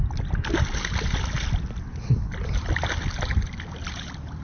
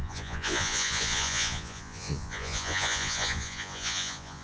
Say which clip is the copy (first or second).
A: second